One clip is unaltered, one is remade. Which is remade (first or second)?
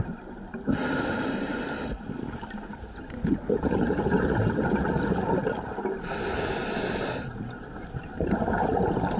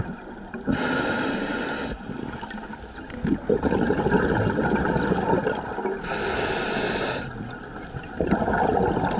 first